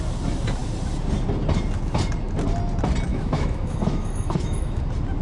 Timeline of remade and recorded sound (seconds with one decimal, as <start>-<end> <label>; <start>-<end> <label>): 0.0-3.1 recorded; 3.1-4.8 remade; 4.8-5.2 recorded